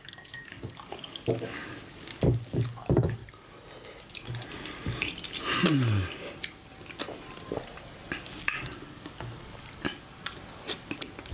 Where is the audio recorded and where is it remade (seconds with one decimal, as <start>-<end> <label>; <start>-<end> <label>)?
0.0-3.2 remade; 3.2-8.4 recorded; 8.4-9.9 remade; 9.9-11.3 recorded